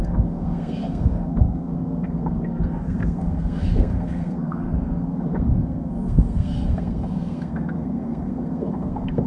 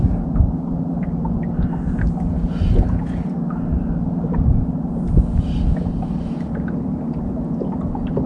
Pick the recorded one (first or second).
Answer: second